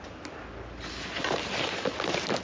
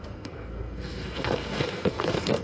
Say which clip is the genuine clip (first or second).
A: first